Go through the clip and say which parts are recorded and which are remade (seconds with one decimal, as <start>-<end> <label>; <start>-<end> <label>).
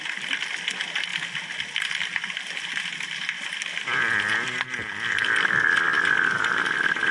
0.0-7.1 recorded